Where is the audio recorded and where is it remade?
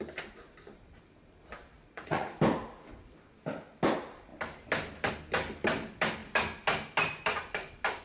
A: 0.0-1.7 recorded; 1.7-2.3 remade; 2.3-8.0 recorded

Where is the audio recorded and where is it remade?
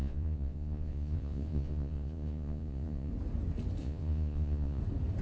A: 0.0-3.1 remade; 3.1-3.8 recorded; 3.8-4.8 remade; 4.8-5.2 recorded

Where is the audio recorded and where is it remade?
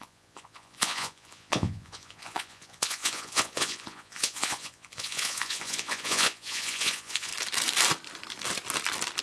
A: 0.0-7.3 remade; 7.3-9.2 recorded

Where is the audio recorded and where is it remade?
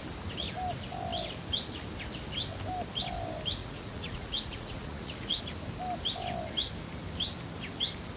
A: 0.0-3.6 recorded; 3.6-5.4 remade; 5.4-8.2 recorded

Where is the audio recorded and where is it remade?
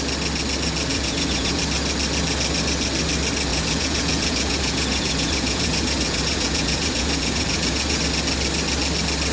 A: 0.0-0.9 recorded; 0.9-1.6 remade; 1.6-3.5 recorded; 3.5-8.0 remade; 8.0-9.3 recorded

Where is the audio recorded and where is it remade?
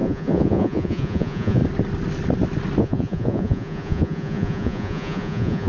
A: 0.0-1.6 remade; 1.6-2.8 recorded; 2.8-5.7 remade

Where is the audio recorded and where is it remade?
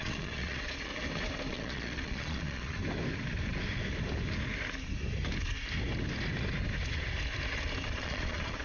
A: 0.0-0.9 remade; 0.9-1.5 recorded; 1.5-2.8 remade; 2.8-7.9 recorded; 7.9-8.6 remade